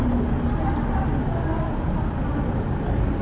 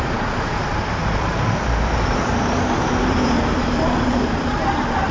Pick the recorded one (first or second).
first